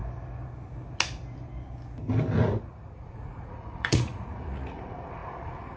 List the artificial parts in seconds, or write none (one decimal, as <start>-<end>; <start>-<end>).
2.6-5.8